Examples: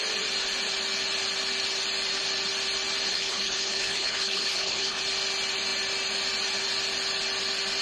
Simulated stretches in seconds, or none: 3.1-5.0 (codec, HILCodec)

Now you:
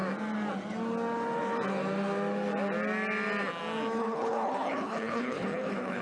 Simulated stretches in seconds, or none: 4.0-6.0 (codec, HILCodec)

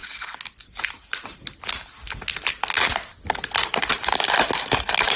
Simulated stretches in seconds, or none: none